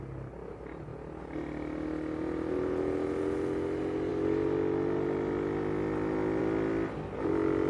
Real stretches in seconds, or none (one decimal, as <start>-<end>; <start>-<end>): 0.0-7.7